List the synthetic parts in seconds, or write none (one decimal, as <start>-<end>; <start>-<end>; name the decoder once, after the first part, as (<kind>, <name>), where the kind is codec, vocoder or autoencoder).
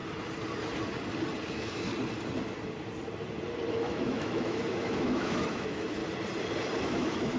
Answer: 1.5-1.9 (autoencoder, DAC-VAE); 3.7-6.0; 6.8-7.4